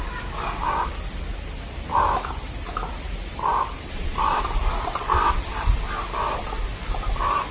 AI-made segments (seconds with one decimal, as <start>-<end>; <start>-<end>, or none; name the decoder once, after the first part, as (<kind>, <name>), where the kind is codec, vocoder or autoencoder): none